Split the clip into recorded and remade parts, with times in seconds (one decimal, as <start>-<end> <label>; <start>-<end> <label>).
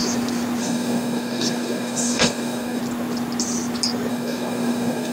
0.0-0.6 recorded; 0.6-2.8 remade; 2.8-4.1 recorded; 4.1-5.1 remade